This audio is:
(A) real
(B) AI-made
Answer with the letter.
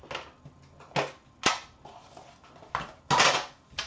A